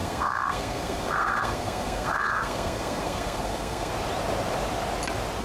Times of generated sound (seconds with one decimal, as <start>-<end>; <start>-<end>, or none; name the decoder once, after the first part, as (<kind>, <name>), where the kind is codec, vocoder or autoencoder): 0.0-3.9 (codec, SNAC)

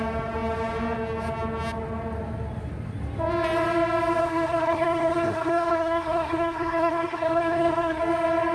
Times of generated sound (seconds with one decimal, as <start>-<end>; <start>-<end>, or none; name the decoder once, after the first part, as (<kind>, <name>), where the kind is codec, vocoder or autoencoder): 4.2-8.0 (codec, SNAC)

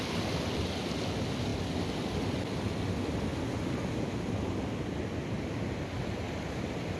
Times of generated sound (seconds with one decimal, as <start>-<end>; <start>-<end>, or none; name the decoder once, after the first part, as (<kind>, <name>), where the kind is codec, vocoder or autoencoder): none

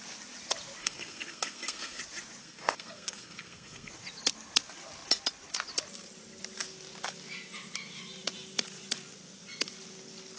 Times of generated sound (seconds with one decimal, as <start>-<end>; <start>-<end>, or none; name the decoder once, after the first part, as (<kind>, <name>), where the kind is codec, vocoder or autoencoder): 0.8-2.0 (codec, SNAC); 2.4-3.9

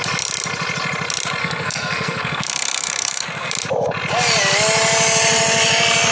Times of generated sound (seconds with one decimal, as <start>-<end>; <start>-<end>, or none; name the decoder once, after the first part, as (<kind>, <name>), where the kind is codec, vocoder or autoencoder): 1.4-3.5 (codec, SNAC)

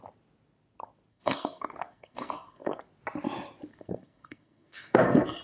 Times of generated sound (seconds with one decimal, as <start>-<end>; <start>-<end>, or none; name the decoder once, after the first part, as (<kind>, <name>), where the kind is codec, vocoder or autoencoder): 1.1-2.8 (codec, SNAC); 3.7-5.4

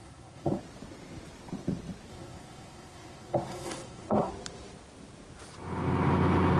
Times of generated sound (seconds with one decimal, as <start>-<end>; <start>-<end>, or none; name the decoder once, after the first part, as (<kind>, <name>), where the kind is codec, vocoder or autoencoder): 0.0-0.6 (codec, SNAC); 2.1-4.3

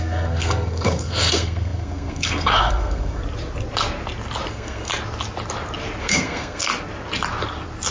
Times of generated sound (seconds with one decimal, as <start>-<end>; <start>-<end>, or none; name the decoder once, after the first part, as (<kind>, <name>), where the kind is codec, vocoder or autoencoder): 0.0-3.2 (codec, SNAC); 4.5-4.9; 6.0-6.7